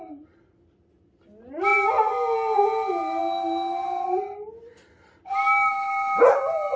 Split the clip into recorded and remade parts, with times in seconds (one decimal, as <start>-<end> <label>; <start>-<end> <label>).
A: 0.0-6.8 recorded